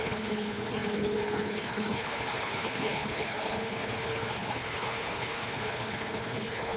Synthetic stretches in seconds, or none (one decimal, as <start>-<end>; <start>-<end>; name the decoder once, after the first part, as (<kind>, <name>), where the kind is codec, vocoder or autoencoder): 0.0-6.8 (codec, HILCodec)